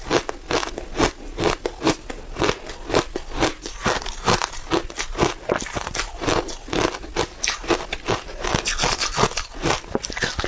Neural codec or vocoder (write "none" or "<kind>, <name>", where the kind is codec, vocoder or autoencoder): none